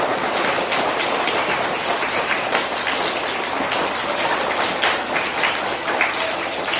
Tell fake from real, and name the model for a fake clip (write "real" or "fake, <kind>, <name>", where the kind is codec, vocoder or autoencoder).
real